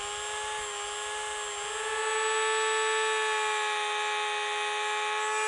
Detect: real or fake real